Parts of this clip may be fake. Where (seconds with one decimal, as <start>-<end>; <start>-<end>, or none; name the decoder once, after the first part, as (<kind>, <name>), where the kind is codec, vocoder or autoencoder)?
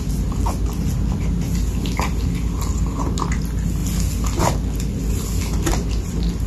none